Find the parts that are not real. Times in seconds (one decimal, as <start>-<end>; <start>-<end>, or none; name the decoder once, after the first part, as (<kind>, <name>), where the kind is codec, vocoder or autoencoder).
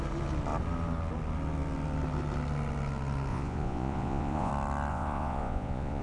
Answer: 3.3-4.5 (vocoder, Vocos); 4.9-6.0